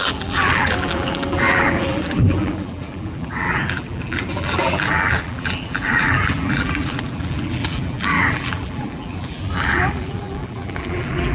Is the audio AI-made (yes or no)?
yes